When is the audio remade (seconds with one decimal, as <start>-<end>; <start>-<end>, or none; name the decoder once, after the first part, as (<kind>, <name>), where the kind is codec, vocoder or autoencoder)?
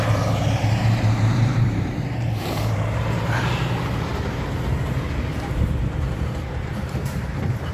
0.0-7.7 (vocoder, BigVGAN v2)